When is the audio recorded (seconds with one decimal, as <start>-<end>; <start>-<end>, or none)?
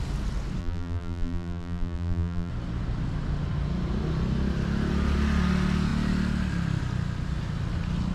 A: 0.0-0.6; 2.5-8.1